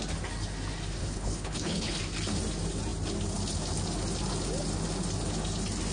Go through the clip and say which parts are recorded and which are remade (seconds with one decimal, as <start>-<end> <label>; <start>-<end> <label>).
0.0-1.0 recorded; 1.0-2.0 remade; 2.0-5.9 recorded